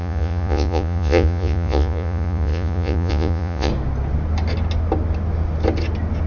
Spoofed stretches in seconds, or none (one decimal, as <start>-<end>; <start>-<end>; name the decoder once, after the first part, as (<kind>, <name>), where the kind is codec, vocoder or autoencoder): 0.0-3.7 (vocoder, Vocos)